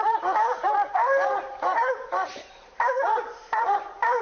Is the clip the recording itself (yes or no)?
no